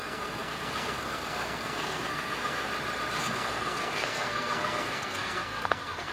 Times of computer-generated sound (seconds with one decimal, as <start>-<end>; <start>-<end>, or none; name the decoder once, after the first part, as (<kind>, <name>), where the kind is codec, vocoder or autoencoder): 0.0-2.7 (codec, SNAC); 3.2-6.1